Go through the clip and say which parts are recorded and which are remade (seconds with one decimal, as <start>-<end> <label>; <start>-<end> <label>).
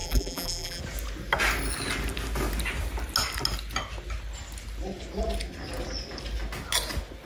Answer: 0.0-0.8 remade; 0.8-7.3 recorded